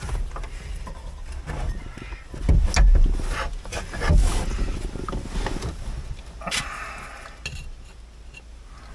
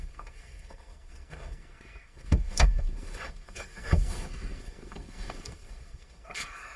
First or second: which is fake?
second